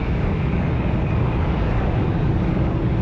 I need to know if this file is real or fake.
fake